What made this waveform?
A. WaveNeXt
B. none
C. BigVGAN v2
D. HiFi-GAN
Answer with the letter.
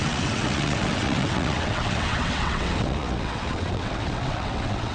A